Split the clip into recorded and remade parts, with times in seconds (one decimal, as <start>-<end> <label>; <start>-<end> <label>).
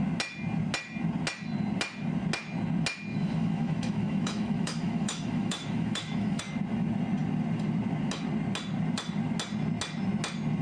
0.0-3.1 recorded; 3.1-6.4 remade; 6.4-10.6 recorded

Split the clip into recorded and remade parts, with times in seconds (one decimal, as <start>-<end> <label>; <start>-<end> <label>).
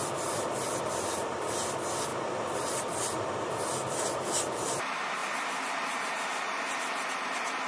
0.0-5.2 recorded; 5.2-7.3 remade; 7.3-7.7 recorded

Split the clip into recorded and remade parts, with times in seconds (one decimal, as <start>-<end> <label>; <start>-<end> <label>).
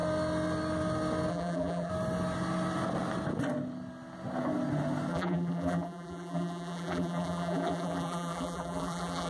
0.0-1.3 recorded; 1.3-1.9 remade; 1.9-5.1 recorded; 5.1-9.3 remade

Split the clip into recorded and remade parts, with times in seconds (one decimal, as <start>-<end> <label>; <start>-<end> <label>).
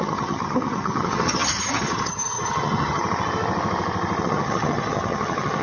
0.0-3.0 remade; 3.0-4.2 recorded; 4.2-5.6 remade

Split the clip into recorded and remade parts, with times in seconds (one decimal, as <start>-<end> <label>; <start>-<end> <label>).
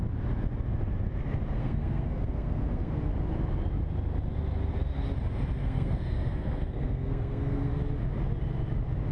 0.0-1.6 recorded; 1.6-3.1 remade; 3.1-5.6 recorded; 5.6-7.7 remade; 7.7-9.1 recorded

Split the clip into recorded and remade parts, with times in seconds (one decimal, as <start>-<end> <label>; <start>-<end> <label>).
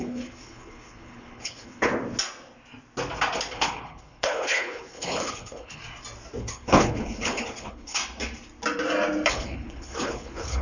0.0-1.9 remade; 1.9-3.5 recorded; 3.5-5.8 remade; 5.8-6.4 recorded; 6.4-8.0 remade; 8.0-9.3 recorded; 9.3-10.6 remade